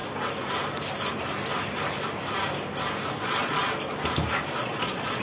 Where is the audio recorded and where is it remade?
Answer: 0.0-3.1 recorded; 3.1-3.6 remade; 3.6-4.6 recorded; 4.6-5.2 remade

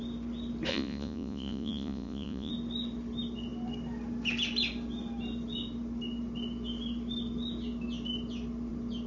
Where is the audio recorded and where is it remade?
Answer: 0.0-0.7 recorded; 0.7-2.5 remade; 2.5-9.1 recorded

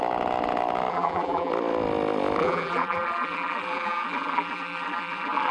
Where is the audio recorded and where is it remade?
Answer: 0.0-0.9 recorded; 0.9-1.5 remade; 1.5-2.4 recorded; 2.4-5.5 remade

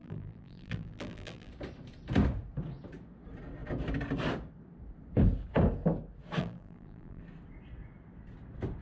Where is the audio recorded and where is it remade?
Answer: 0.0-1.5 remade; 1.5-6.4 recorded; 6.4-7.2 remade; 7.2-8.8 recorded

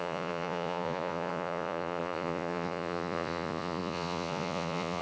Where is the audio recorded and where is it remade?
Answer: 0.0-5.0 remade

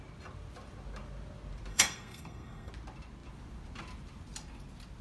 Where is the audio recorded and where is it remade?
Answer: 0.0-1.7 recorded; 1.7-2.7 remade; 2.7-5.0 recorded

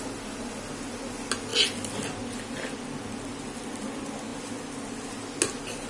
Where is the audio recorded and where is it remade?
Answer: 0.0-5.9 recorded

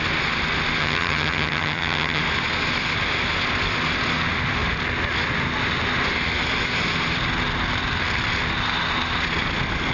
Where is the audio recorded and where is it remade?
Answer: 0.0-0.8 recorded; 0.8-2.2 remade; 2.2-9.9 recorded